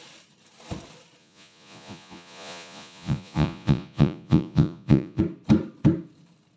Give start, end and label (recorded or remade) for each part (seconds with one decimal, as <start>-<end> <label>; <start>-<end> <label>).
0.0-1.2 recorded; 1.2-5.2 remade; 5.2-6.6 recorded